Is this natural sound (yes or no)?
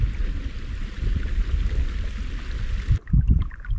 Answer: yes